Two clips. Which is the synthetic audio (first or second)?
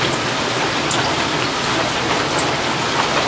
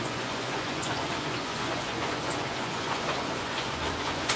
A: second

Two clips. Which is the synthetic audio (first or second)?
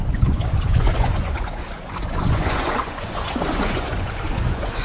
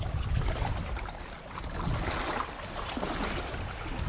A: first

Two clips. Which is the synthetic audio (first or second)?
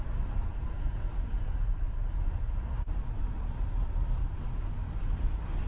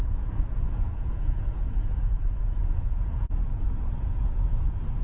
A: second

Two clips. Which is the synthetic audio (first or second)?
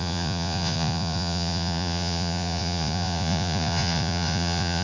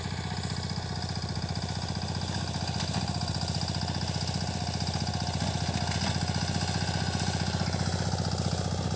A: first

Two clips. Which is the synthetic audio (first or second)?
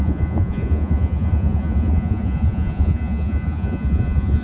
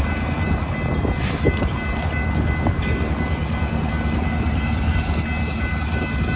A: first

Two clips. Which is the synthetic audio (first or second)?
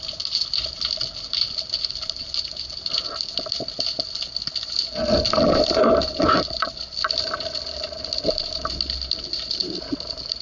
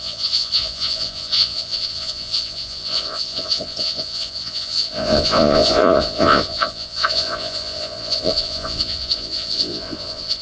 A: second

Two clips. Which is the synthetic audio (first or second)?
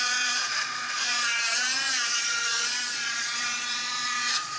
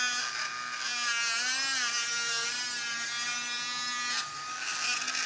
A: first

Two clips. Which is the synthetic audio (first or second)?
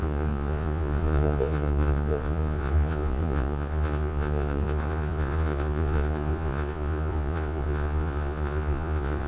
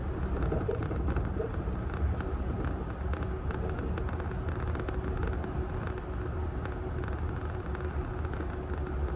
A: first